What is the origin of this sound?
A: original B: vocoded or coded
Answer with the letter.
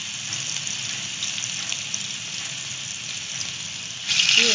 A